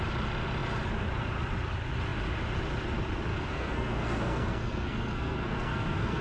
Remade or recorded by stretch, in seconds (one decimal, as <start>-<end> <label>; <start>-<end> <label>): 0.0-3.3 recorded; 3.3-6.2 remade